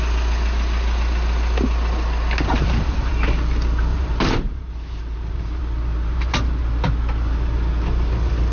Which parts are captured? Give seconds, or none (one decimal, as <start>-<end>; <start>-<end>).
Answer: 0.0-2.5; 3.1-3.9; 5.6-6.1; 6.6-8.5